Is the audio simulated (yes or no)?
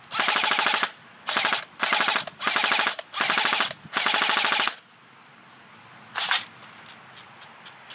no